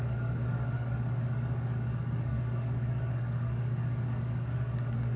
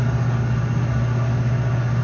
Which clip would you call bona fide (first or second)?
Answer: second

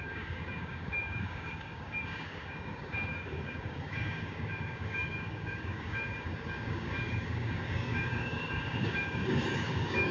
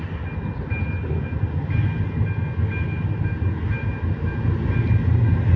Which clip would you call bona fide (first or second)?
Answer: second